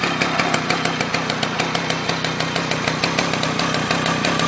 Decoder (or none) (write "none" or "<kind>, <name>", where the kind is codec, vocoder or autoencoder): none